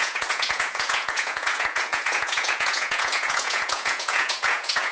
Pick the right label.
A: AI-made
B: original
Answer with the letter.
A